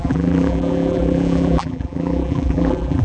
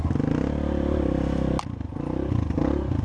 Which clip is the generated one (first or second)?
first